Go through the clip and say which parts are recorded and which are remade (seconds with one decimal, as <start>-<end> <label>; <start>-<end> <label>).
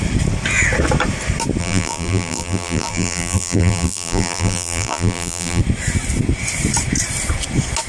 0.0-1.6 recorded; 1.6-5.6 remade; 5.6-7.9 recorded